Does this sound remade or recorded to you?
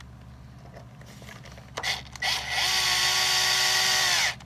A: recorded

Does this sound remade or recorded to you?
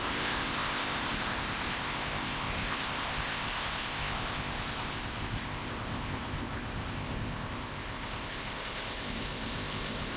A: remade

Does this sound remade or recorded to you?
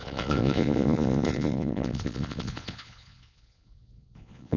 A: remade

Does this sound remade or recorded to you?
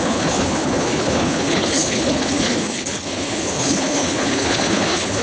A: remade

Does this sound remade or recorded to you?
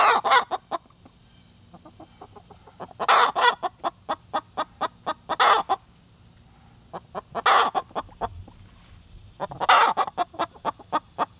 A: recorded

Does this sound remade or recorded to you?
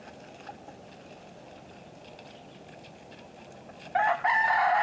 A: recorded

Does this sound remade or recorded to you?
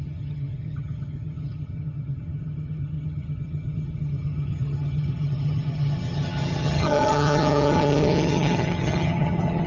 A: remade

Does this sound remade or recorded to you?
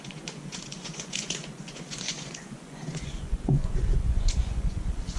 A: remade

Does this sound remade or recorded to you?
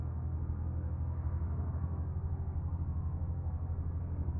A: remade